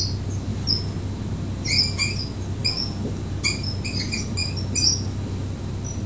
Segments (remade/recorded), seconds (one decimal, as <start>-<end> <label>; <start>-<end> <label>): 0.0-6.1 recorded